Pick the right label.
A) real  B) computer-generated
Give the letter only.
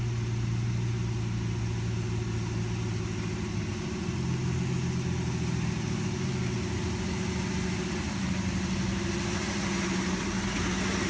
A